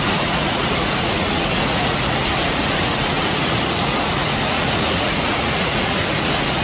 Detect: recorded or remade remade